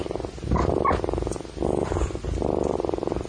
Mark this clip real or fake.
real